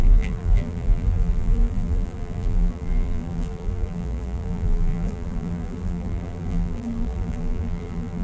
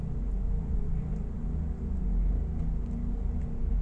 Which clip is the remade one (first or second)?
first